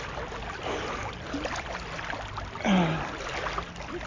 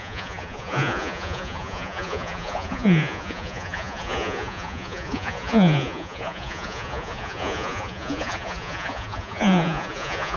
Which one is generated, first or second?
second